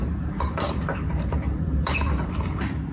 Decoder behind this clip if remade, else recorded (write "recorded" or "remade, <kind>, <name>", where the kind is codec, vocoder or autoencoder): remade, vocoder, BigVGAN v2